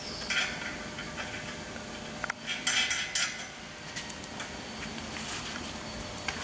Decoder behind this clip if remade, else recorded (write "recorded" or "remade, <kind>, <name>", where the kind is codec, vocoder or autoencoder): recorded